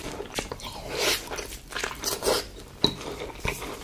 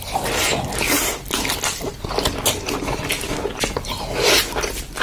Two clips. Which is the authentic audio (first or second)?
second